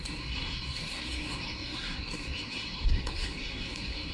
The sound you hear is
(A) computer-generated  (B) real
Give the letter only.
A